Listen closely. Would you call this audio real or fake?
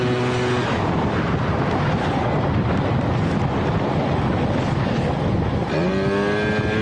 real